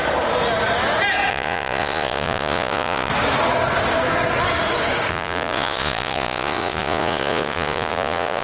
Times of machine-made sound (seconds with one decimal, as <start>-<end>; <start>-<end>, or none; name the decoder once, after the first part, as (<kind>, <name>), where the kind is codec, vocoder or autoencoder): 1.3-3.1 (vocoder, Vocos); 5.1-8.4